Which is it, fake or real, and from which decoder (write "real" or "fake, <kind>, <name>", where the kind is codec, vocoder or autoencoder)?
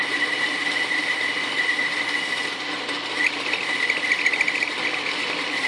real